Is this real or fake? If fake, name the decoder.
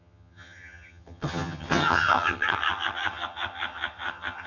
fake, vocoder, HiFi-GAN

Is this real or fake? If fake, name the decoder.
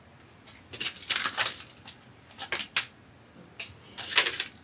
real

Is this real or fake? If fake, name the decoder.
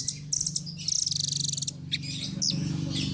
real